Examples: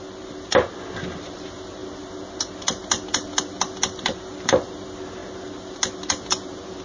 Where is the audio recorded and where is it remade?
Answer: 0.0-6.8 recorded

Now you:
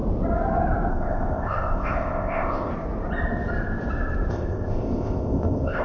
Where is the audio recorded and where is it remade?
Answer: 0.0-0.9 recorded; 0.9-2.7 remade; 2.7-4.3 recorded; 4.3-5.8 remade

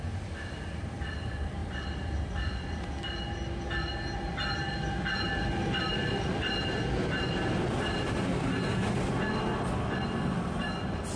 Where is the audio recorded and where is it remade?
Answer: 0.0-11.2 recorded

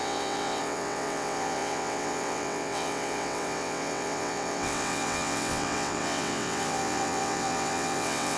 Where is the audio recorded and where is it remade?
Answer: 0.0-8.4 remade

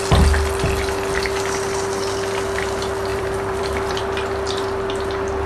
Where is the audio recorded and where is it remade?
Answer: 0.0-3.1 recorded; 3.1-4.0 remade; 4.0-5.5 recorded

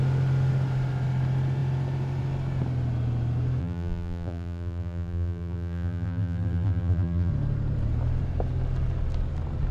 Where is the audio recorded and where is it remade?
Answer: 0.0-3.6 recorded; 3.6-7.3 remade; 7.3-9.7 recorded

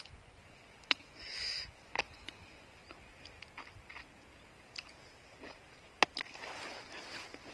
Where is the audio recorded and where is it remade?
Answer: 0.0-2.8 remade; 2.8-7.5 recorded

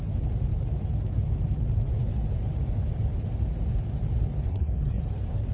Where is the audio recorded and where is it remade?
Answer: 0.0-4.5 recorded; 4.5-5.0 remade; 5.0-5.5 recorded